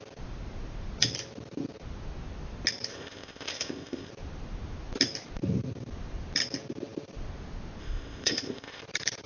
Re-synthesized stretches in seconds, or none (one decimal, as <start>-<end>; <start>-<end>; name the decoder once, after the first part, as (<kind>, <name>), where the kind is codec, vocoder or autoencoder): 2.9-4.1 (codec, ZipCodec); 7.8-8.8